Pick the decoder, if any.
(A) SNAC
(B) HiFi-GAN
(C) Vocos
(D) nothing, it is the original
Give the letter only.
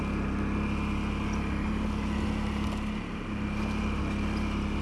D